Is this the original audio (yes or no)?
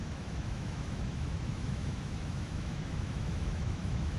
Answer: no